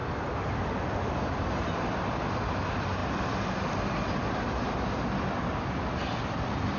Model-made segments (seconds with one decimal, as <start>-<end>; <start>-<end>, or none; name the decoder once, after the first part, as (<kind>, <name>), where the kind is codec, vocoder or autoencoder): 0.0-0.7 (vocoder, BigVGAN v2); 3.0-4.5; 6.0-6.8